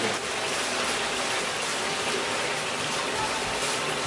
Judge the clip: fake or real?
real